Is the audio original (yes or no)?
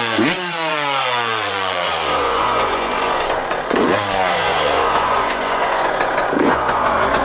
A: no